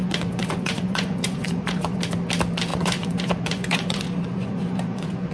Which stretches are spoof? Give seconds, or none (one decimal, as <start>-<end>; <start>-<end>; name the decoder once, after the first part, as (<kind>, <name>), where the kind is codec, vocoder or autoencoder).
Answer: 0.0-2.0 (vocoder, Vocos); 2.7-5.3